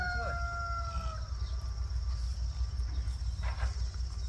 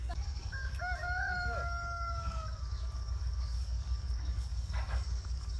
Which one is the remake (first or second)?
second